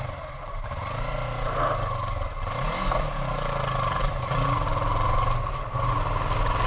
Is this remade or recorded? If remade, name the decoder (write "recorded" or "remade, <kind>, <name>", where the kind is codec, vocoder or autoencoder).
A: recorded